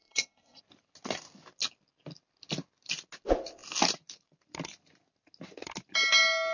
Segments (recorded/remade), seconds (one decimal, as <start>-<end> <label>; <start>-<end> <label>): 0.0-0.6 remade; 0.6-6.5 recorded